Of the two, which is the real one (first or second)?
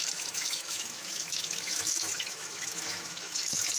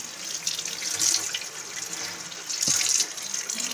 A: second